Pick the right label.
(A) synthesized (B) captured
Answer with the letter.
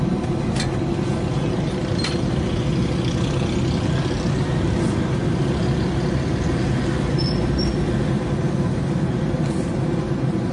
B